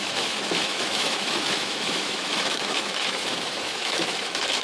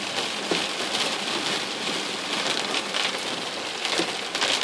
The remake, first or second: first